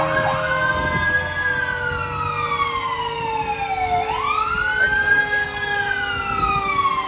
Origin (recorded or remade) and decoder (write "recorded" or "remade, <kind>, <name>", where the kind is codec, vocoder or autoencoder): recorded